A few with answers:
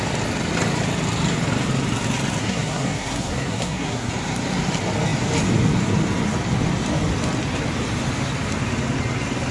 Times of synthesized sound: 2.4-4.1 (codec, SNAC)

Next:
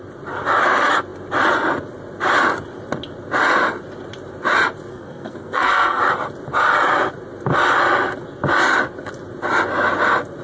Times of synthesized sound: 4.9-6.0 (codec, SNAC)

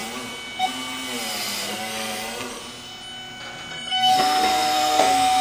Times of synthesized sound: 1.7-2.6 (codec, SNAC); 3.7-5.4

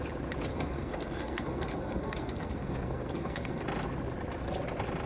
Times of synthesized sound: 0.5-3.6 (codec, SNAC)

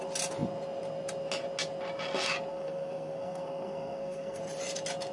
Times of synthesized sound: 2.5-4.4 (codec, SNAC)

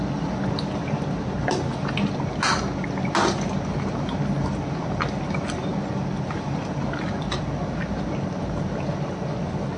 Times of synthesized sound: none

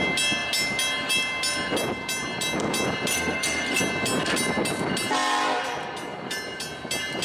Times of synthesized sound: 3.1-3.8 (codec, SNAC)

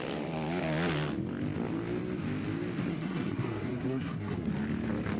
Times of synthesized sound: 2.9-4.5 (codec, SNAC)